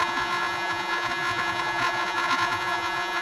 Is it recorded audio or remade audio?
remade